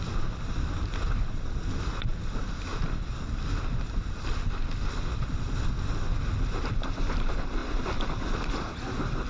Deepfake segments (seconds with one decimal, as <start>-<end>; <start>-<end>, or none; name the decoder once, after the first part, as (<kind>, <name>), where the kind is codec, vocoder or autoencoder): none